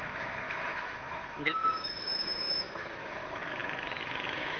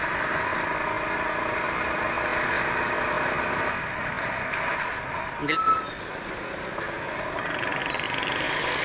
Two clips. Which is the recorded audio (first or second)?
second